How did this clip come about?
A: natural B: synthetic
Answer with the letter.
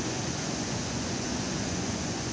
B